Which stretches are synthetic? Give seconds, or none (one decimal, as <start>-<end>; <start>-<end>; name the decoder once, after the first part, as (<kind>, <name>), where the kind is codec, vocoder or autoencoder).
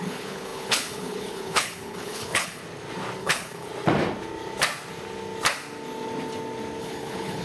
0.0-2.6 (codec, HILCodec); 3.2-3.7; 6.8-7.4